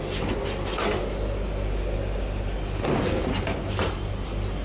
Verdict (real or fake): real